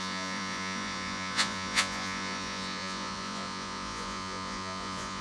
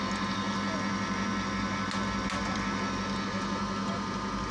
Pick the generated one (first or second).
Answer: first